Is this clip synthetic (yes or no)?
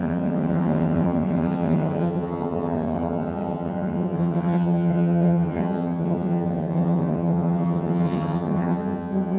yes